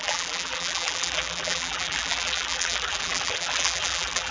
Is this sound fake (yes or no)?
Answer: yes